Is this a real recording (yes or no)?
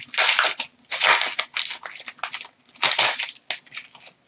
yes